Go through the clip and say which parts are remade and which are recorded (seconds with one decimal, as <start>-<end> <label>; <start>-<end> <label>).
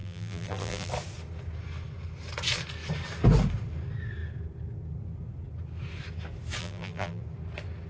0.0-0.9 remade; 0.9-6.6 recorded; 6.6-7.2 remade; 7.2-7.9 recorded